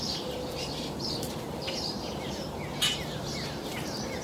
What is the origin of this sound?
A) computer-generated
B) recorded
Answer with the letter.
A